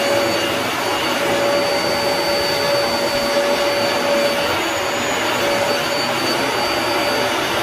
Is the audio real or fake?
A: real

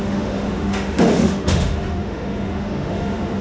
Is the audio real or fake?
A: fake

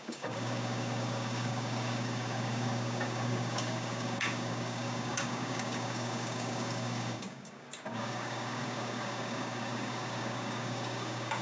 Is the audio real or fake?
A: fake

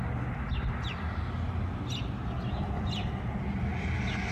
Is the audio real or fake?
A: real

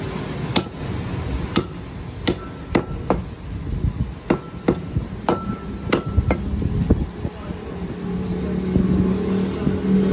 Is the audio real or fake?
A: real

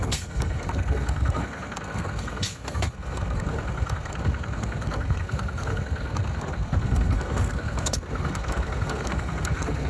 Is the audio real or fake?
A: fake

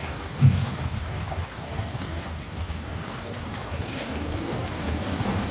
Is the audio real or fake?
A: fake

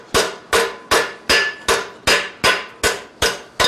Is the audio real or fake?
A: real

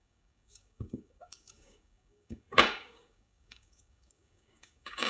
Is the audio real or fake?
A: fake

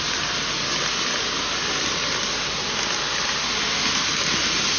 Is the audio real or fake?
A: real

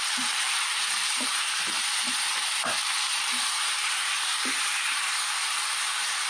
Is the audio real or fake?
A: fake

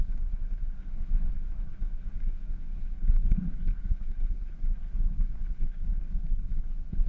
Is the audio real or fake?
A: fake